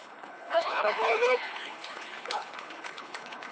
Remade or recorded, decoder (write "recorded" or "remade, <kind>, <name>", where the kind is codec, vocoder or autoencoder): remade, codec, HILCodec